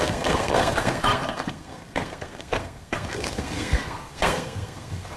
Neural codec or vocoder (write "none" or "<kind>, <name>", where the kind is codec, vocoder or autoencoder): codec, SNAC